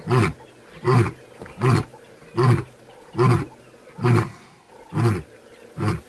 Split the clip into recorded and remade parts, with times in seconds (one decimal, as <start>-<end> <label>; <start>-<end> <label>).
0.0-4.2 recorded; 4.2-4.7 remade; 4.7-6.1 recorded

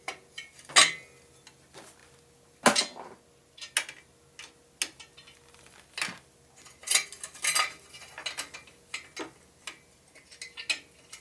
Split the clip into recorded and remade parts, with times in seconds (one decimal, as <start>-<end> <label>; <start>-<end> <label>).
0.0-11.2 recorded

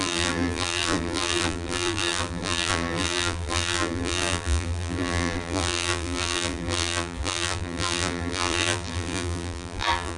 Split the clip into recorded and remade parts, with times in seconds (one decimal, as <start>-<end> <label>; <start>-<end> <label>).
0.0-10.2 remade

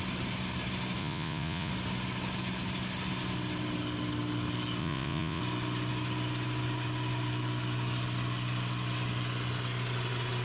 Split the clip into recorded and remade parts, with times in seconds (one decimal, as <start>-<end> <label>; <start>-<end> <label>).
0.0-1.0 recorded; 1.0-1.7 remade; 1.7-4.8 recorded; 4.8-5.4 remade; 5.4-10.4 recorded

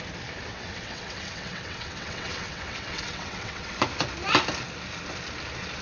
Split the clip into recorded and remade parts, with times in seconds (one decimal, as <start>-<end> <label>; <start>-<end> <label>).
0.0-0.5 recorded; 0.5-3.8 remade; 3.8-5.8 recorded

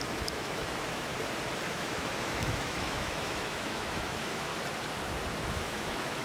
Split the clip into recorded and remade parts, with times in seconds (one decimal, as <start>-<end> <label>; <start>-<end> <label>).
0.0-1.1 remade; 1.1-1.7 recorded; 1.7-4.5 remade; 4.5-5.5 recorded; 5.5-6.2 remade

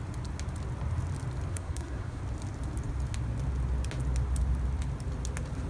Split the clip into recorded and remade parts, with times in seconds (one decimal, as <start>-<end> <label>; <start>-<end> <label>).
0.0-1.5 recorded; 1.5-2.2 remade; 2.2-5.7 recorded

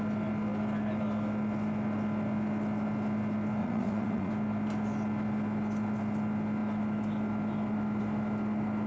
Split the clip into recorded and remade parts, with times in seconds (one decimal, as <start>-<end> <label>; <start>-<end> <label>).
0.0-3.6 recorded; 3.6-4.3 remade; 4.3-8.9 recorded